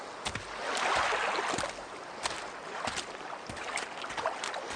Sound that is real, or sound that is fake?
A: real